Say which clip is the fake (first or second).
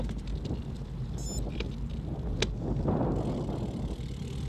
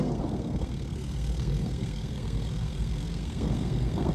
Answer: second